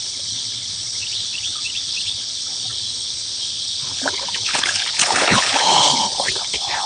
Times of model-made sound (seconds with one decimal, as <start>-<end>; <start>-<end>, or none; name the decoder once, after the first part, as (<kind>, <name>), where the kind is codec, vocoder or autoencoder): 0.0-6.9 (codec, HILCodec)